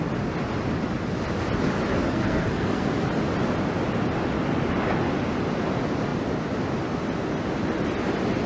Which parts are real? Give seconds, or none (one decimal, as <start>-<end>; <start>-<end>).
0.0-1.9; 2.9-8.5